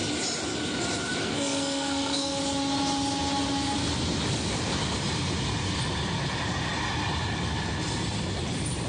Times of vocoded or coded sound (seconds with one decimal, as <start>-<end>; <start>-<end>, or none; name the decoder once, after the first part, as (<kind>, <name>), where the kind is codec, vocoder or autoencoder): 1.2-2.4 (codec, SNAC)